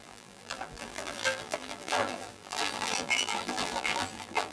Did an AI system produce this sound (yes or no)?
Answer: yes